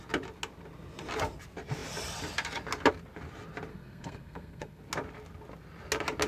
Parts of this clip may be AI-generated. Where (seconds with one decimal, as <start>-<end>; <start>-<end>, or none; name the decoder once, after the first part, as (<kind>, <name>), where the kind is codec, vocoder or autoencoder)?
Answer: 3.7-4.8 (codec, SNAC)